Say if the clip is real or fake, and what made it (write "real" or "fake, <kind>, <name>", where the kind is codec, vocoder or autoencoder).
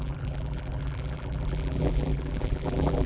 fake, vocoder, BigVGAN v2